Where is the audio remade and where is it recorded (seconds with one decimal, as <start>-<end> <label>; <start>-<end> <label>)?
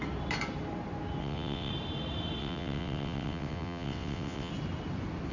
0.0-1.2 recorded; 1.2-1.7 remade; 1.7-2.4 recorded; 2.4-4.5 remade; 4.5-5.3 recorded